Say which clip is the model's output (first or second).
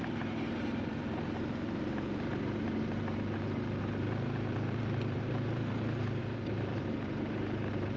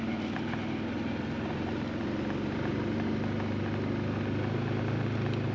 first